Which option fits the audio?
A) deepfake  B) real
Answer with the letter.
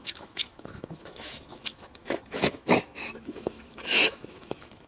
A